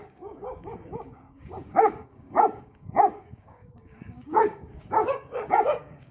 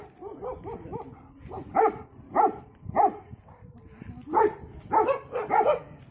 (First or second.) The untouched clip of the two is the second